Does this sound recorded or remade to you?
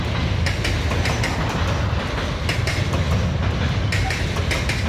recorded